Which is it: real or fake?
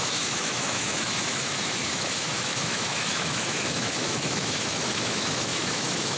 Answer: fake